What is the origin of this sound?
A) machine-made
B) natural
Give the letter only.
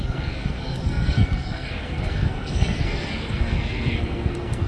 A